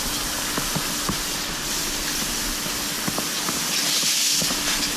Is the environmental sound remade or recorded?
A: recorded